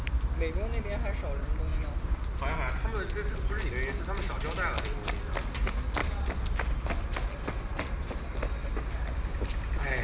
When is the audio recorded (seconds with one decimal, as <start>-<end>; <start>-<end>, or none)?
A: 0.0-6.0; 7.0-10.0